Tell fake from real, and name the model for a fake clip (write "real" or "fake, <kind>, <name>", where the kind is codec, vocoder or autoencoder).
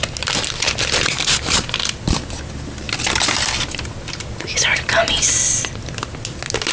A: real